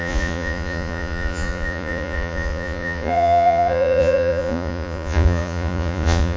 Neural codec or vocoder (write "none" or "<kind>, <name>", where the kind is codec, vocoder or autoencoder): vocoder, Vocos